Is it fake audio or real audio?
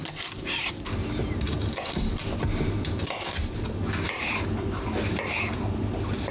real